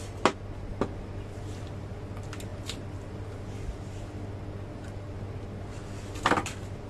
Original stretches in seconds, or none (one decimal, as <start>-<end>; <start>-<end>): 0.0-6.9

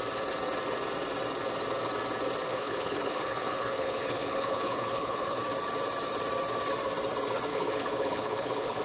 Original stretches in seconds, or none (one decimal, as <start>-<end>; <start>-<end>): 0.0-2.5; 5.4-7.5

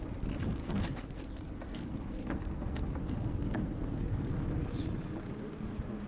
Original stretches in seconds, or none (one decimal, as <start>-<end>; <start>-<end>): 0.0-0.6; 4.3-6.1

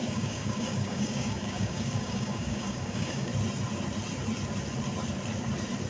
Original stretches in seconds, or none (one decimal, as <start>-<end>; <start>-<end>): 3.3-5.9

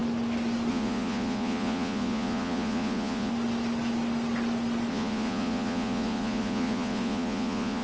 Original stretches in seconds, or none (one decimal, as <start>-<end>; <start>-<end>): 0.0-0.7; 3.3-4.9

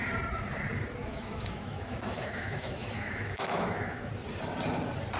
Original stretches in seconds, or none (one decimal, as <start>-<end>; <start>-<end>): 0.0-1.0; 4.1-5.2

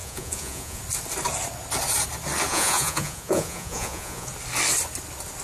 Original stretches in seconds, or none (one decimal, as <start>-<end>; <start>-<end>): 0.8-2.5; 4.3-5.4